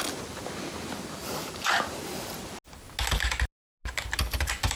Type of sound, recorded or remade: recorded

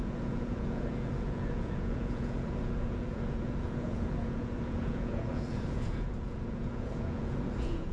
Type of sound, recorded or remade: remade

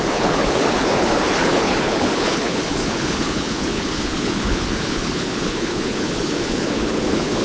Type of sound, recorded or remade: remade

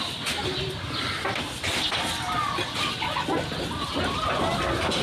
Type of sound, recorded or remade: recorded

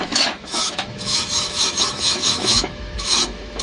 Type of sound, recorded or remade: remade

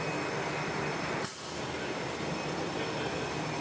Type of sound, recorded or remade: recorded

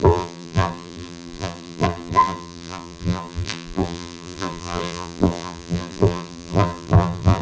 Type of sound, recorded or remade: remade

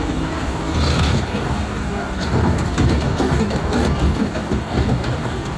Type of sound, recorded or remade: remade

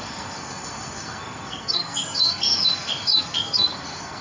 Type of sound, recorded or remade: remade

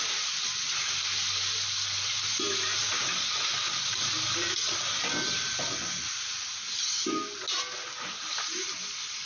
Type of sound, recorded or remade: recorded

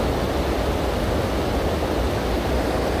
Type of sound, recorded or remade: recorded